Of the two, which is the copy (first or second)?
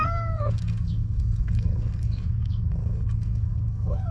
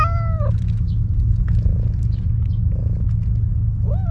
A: first